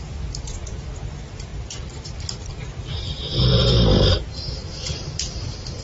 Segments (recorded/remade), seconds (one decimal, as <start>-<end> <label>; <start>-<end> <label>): 0.0-1.5 recorded; 1.5-2.1 remade; 2.1-2.5 recorded; 2.5-3.6 remade; 3.6-5.8 recorded